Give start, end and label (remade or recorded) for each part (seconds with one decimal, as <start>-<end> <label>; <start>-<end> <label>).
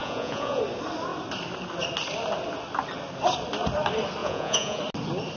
0.0-0.6 remade; 0.6-4.2 recorded; 4.2-4.8 remade; 4.8-5.4 recorded